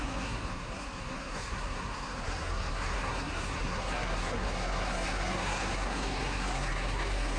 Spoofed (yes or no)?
yes